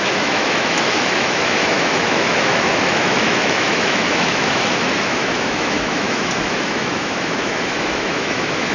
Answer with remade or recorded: remade